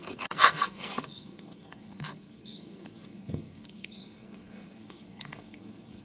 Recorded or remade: remade